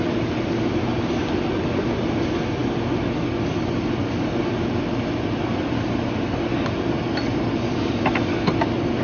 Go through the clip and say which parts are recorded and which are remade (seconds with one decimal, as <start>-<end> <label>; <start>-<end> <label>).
0.0-9.0 recorded